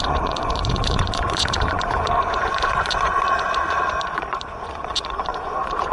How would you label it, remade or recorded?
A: remade